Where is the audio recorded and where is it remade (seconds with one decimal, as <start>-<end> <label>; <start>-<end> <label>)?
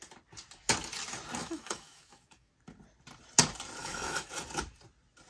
0.0-1.4 recorded; 1.4-2.5 remade; 2.5-3.8 recorded; 3.8-4.3 remade; 4.3-5.3 recorded